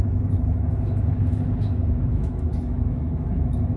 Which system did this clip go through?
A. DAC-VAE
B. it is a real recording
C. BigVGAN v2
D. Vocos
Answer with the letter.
A